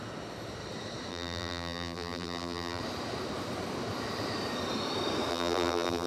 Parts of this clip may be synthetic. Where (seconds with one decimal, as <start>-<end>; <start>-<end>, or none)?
1.1-2.8; 5.3-6.1